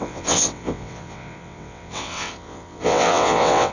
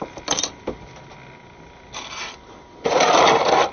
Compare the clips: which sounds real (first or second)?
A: second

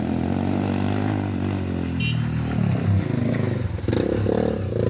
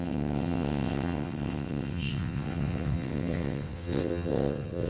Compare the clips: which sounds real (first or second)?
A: first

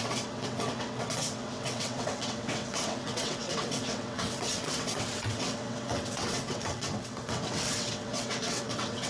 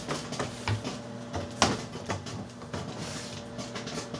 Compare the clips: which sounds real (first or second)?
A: second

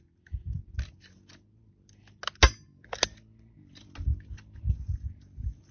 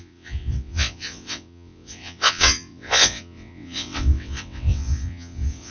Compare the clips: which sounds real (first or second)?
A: first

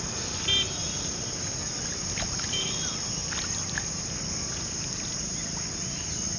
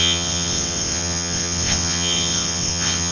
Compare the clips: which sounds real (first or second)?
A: first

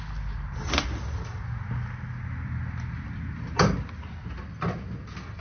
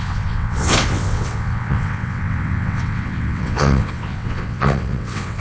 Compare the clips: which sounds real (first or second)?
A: first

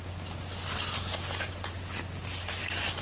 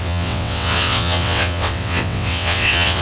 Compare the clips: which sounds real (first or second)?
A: first